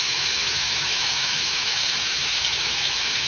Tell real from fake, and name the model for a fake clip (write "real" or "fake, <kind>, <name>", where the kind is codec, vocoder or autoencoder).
fake, autoencoder, DAC-VAE